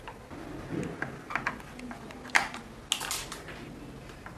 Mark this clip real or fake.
real